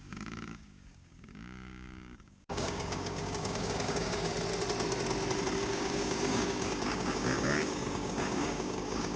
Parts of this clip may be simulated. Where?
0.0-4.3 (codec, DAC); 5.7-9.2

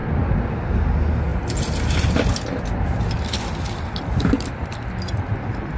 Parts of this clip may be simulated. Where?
none

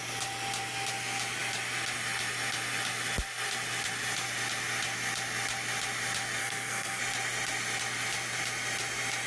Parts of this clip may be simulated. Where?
6.4-7.0 (codec, SNAC)

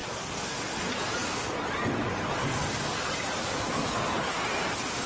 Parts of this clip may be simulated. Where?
none